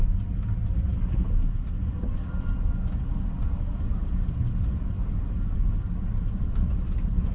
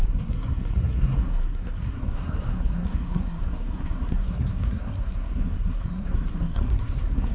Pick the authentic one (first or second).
first